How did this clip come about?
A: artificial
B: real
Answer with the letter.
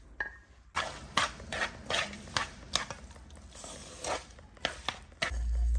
B